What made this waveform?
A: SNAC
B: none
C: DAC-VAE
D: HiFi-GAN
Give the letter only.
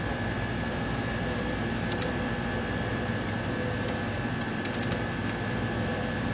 B